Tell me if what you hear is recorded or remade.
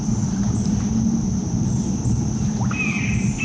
recorded